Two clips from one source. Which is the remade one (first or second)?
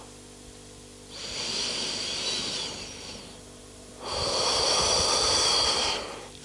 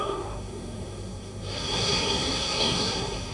second